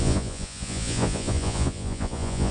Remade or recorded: remade